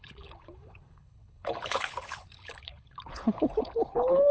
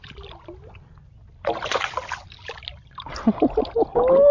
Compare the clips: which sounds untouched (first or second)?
second